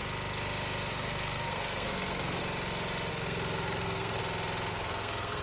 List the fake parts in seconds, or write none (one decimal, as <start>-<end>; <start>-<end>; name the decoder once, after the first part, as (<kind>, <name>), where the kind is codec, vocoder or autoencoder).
0.9-2.4 (codec, SNAC); 3.1-4.2; 4.7-5.4